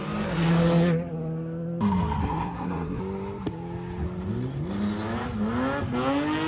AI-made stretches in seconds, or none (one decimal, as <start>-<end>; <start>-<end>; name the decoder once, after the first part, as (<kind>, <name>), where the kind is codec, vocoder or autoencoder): 2.2-3.0 (codec, SNAC)